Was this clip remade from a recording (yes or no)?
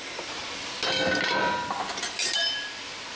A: no